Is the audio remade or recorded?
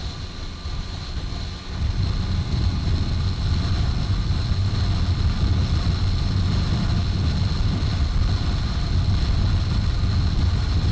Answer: recorded